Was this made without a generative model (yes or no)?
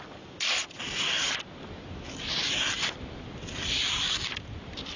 no